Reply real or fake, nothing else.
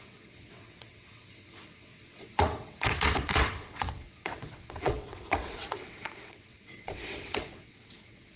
fake